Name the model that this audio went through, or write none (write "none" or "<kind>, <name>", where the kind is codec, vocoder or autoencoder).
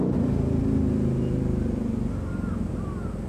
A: none